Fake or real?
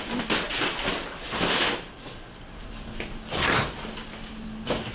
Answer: fake